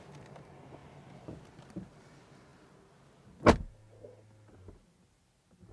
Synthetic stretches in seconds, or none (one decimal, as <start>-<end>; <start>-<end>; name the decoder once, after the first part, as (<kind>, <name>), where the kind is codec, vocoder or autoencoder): none